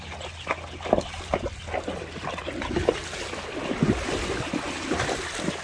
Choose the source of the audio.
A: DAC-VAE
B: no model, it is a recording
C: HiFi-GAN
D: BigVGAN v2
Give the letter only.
B